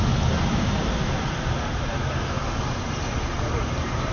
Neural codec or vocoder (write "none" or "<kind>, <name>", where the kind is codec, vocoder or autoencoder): none